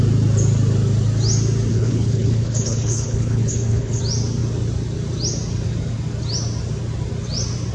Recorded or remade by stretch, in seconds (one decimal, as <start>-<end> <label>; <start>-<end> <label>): 0.0-1.7 recorded; 1.7-4.0 remade; 4.0-7.7 recorded